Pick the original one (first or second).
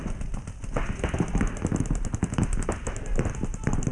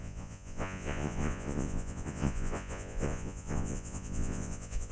first